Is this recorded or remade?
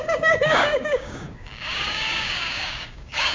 remade